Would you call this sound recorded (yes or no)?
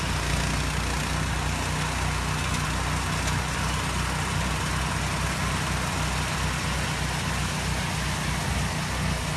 yes